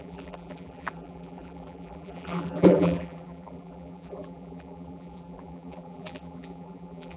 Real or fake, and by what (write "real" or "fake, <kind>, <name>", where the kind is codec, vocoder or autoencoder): fake, vocoder, BigVGAN v2